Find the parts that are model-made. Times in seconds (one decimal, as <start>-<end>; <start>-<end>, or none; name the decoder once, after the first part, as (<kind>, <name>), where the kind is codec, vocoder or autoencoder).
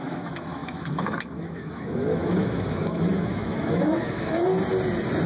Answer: 0.0-4.5 (autoencoder, DAC-VAE)